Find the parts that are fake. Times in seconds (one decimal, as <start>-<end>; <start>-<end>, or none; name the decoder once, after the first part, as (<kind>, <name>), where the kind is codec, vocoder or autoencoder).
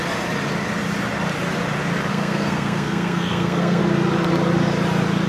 2.1-3.8 (codec, SNAC)